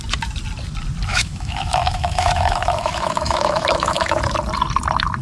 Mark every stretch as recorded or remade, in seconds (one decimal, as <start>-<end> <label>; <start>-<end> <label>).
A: 0.0-1.1 recorded; 1.1-4.2 remade; 4.2-5.2 recorded